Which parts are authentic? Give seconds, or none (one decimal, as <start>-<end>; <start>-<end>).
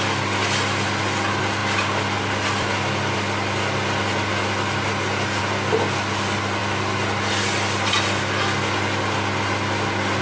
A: 0.0-10.2